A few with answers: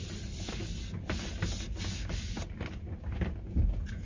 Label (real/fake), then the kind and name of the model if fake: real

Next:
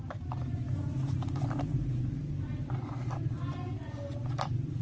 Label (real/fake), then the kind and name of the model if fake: fake, vocoder, BigVGAN v2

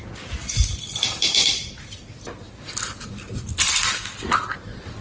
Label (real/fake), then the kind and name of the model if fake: real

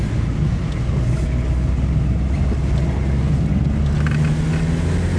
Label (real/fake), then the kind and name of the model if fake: real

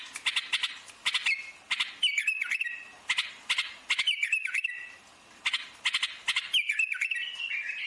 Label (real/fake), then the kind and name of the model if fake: real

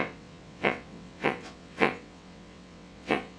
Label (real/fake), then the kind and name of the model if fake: fake, vocoder, WaveNeXt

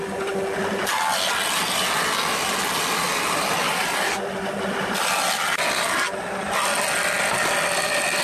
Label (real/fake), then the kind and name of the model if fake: real